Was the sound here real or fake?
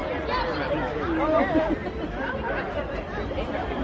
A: real